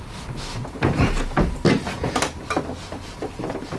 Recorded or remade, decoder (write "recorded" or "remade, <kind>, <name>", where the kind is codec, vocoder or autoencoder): recorded